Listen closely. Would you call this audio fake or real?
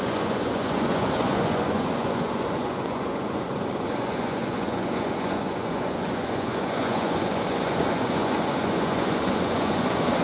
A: fake